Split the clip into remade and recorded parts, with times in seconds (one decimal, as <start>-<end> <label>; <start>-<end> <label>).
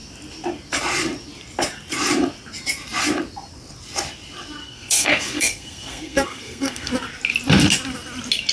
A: 0.0-4.6 recorded; 4.6-6.9 remade; 6.9-8.5 recorded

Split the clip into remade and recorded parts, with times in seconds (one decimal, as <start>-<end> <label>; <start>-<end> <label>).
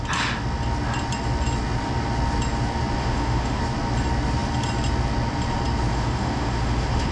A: 0.0-3.0 recorded; 3.0-3.6 remade; 3.6-5.9 recorded; 5.9-7.1 remade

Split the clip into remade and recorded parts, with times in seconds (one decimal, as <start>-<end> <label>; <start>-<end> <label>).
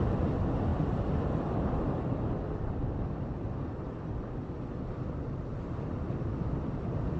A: 0.0-5.5 recorded; 5.5-6.1 remade; 6.1-7.2 recorded